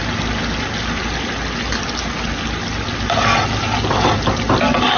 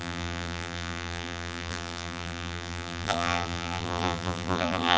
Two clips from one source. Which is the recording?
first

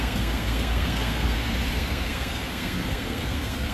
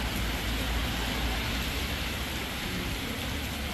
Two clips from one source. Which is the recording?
second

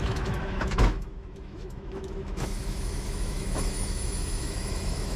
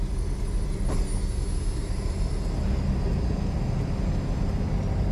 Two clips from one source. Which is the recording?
second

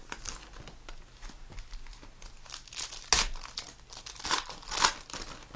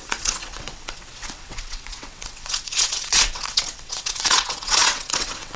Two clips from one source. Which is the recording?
first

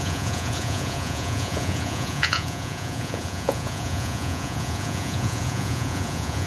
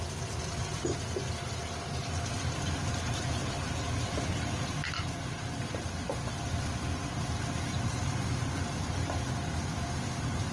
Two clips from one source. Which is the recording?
second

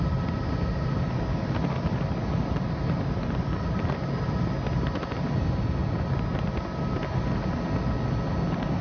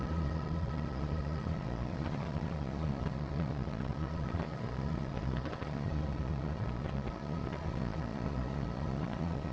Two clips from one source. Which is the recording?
first